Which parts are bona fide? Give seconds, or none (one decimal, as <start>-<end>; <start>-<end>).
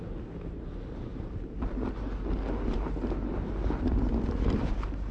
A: 0.0-5.1